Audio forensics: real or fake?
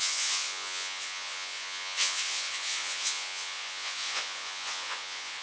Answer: fake